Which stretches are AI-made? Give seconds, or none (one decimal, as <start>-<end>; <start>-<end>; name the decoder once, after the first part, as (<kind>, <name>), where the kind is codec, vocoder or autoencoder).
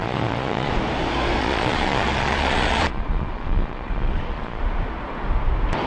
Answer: 0.0-0.7 (vocoder, Vocos); 1.4-4.6